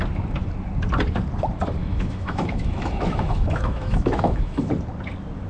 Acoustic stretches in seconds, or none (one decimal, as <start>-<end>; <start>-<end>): 0.0-1.8; 4.7-5.5